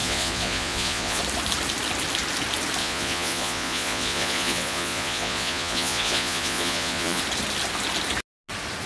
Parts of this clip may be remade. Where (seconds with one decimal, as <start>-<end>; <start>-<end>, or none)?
0.0-1.2; 2.8-7.2